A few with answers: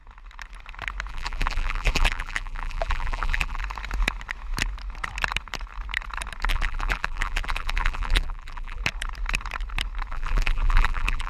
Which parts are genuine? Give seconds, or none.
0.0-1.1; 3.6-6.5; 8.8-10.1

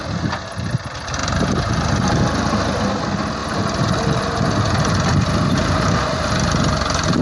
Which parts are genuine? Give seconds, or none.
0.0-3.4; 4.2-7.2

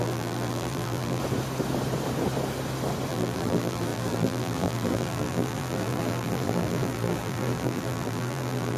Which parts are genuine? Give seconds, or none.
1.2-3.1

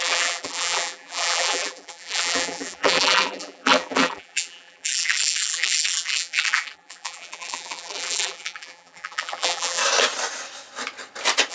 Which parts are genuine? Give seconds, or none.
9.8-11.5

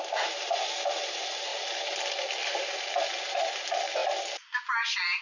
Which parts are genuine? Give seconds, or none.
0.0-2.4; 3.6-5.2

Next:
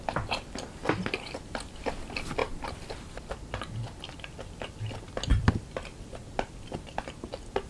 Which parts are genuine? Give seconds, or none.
0.0-5.3; 7.0-7.7